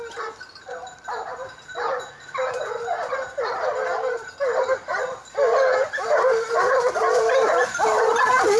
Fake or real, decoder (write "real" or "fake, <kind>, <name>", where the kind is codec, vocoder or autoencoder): real